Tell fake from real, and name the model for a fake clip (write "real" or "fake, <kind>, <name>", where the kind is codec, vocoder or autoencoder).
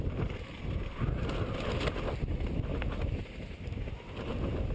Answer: real